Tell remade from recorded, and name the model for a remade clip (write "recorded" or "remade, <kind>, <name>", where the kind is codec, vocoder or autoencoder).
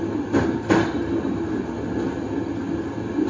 recorded